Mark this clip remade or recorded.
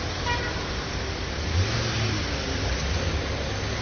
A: recorded